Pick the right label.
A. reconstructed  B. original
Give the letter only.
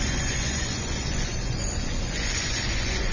A